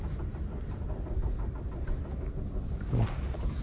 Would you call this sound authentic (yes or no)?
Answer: yes